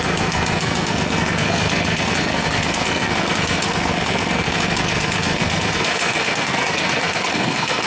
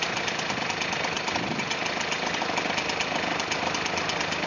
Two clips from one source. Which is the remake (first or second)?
first